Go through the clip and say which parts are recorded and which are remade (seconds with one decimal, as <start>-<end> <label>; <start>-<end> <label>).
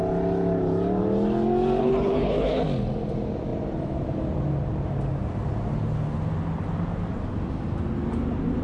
0.0-1.8 recorded; 1.8-2.6 remade; 2.6-8.6 recorded